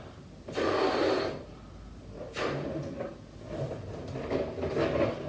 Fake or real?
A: real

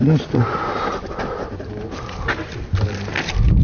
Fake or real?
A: real